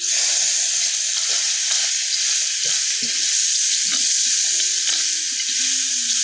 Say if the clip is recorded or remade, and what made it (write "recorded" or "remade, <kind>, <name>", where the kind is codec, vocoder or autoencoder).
recorded